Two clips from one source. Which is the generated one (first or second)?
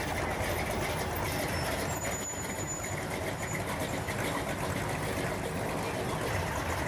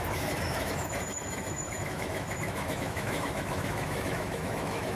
second